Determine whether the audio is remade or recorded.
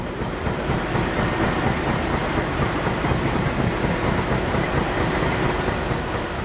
remade